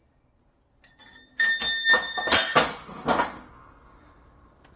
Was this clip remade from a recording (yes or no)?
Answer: no